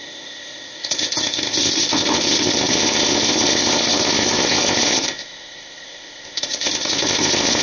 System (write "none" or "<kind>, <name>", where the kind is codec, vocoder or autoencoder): codec, ZipCodec